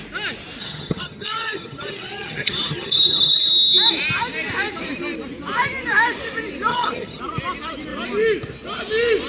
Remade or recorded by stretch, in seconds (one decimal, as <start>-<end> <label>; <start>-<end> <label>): 0.0-0.6 recorded; 0.6-3.5 remade; 3.5-6.7 recorded; 6.7-7.2 remade; 7.2-9.3 recorded